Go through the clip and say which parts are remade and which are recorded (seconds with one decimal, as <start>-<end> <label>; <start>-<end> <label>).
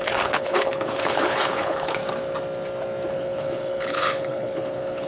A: 0.0-2.0 remade; 2.0-3.1 recorded; 3.1-5.1 remade